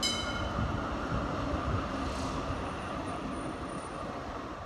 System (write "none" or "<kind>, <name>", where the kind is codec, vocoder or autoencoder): none